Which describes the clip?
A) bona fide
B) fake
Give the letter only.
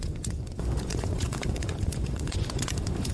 B